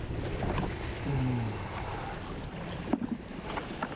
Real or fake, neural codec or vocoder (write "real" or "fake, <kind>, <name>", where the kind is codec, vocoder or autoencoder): real